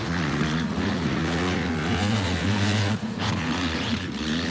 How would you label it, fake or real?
fake